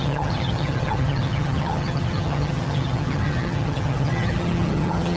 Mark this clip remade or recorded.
remade